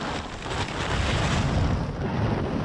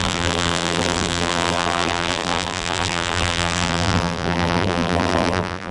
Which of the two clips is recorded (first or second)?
first